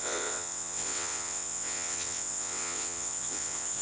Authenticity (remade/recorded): remade